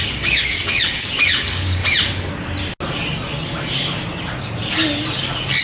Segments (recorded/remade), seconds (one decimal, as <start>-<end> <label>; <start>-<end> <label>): 0.0-1.8 remade; 1.8-5.6 recorded